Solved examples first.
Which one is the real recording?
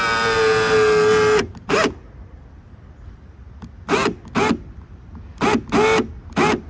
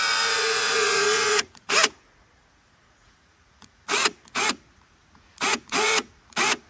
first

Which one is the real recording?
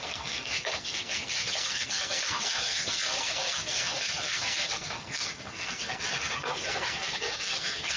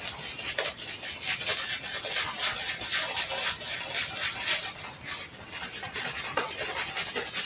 second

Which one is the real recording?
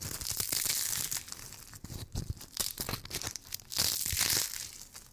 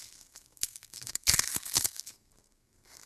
first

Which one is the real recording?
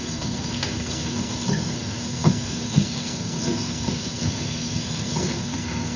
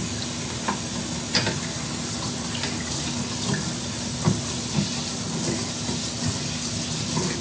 second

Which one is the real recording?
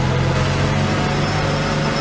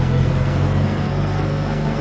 first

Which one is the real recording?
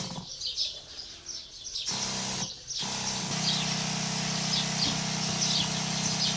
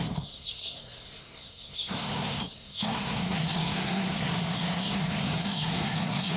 first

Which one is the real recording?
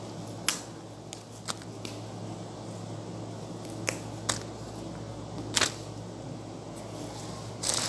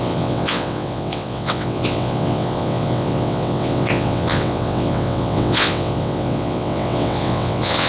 first